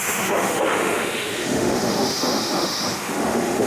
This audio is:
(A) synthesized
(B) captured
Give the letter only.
A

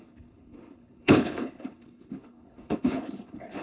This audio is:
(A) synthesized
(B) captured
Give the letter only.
A